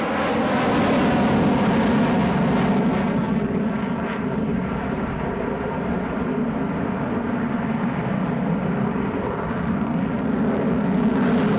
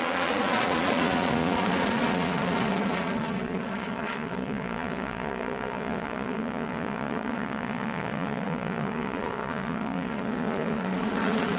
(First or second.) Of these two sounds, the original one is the first